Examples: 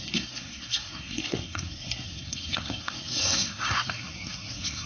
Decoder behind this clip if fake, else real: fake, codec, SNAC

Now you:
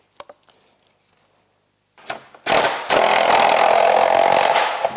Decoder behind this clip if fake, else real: real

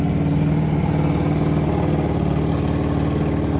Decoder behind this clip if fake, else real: real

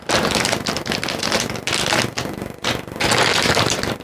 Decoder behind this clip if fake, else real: real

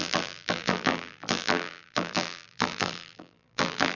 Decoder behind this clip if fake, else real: fake, vocoder, BigVGAN v2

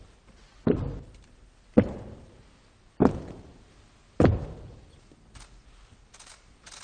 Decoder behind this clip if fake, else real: real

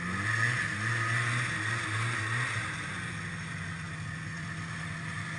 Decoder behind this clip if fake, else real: real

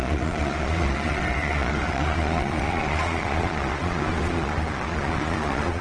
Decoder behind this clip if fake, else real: fake, vocoder, Vocos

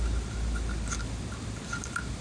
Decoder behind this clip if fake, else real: real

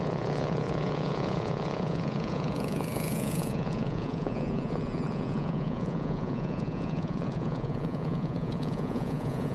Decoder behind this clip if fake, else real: fake, vocoder, Vocos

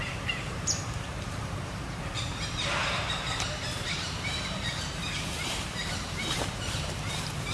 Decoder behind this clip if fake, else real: fake, vocoder, BigVGAN v2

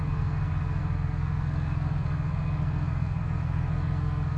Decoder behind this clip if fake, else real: fake, codec, SNAC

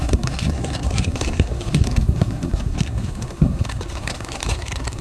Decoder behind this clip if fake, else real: fake, codec, SNAC